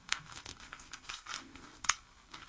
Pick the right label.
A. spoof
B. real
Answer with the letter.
A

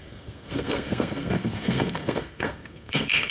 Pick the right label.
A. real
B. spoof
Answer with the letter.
B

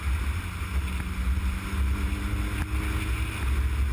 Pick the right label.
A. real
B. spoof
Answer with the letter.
A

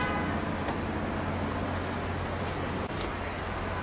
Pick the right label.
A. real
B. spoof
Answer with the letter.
A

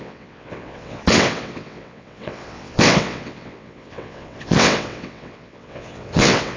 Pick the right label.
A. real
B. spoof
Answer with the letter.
B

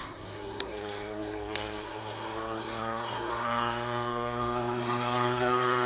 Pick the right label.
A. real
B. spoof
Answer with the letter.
B